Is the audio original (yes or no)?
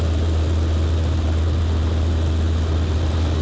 yes